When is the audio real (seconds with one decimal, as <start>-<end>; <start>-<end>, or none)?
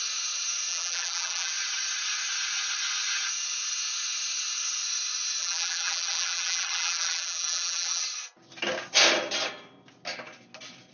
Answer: 0.0-0.7; 1.5-5.4; 8.0-10.9